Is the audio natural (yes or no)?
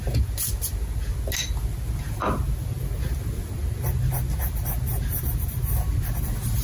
yes